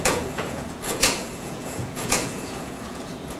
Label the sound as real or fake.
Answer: fake